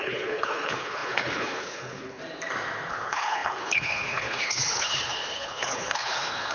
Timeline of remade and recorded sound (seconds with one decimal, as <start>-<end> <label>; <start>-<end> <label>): 0.0-2.2 remade; 2.2-2.9 recorded; 2.9-6.5 remade